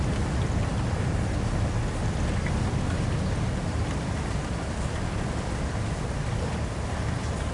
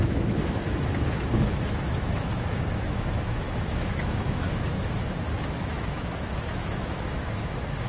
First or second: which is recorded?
first